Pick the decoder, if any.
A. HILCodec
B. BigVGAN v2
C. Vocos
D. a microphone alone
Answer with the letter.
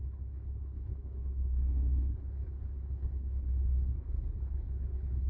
A